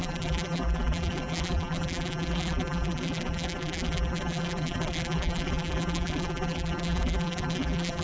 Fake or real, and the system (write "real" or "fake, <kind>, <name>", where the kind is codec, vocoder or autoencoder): fake, vocoder, BigVGAN v2